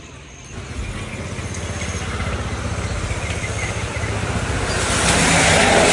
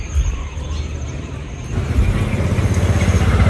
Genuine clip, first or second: first